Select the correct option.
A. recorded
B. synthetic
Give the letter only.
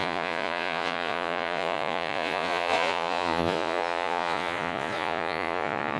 B